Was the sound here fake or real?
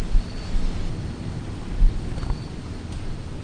real